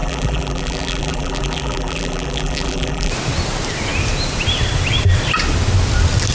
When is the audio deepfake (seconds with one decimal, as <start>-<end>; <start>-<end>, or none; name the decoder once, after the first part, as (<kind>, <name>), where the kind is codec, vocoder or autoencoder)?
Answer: 0.0-3.1 (vocoder, BigVGAN v2)